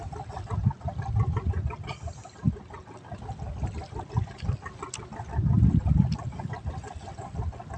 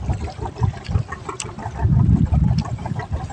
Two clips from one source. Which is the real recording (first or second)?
first